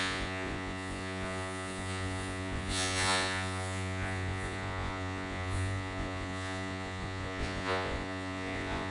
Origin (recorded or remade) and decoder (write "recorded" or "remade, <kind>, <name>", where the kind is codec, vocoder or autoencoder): remade, vocoder, Vocos